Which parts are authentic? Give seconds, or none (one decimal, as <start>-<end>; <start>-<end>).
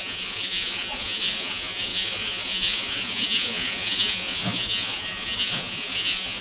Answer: none